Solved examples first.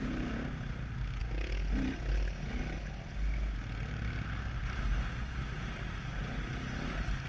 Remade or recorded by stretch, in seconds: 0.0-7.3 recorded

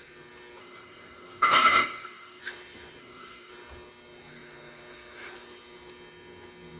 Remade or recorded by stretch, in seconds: 0.0-0.6 recorded; 0.6-2.4 remade; 2.4-3.0 recorded; 3.0-3.5 remade; 3.5-6.8 recorded

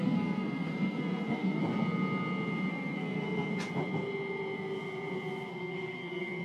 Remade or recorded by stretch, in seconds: 0.0-1.6 remade; 1.6-2.7 recorded; 2.7-3.5 remade; 3.5-5.5 recorded; 5.5-6.4 remade

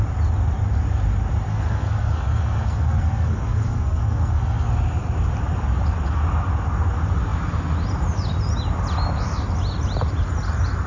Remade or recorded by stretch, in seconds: 0.0-1.5 recorded; 1.5-4.7 remade; 4.7-10.9 recorded